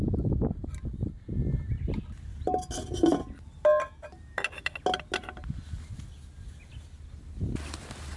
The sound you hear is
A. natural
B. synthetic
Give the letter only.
A